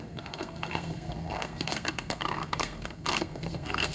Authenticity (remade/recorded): remade